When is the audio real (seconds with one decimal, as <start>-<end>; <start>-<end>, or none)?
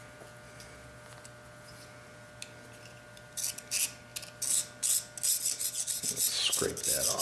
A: 0.0-7.2